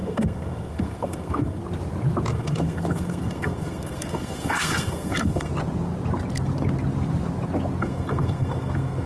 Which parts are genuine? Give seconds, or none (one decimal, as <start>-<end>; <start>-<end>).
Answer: 1.6-2.3; 5.5-7.8